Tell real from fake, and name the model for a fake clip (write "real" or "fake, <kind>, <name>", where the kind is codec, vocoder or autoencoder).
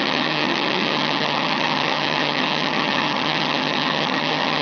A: fake, vocoder, HiFi-GAN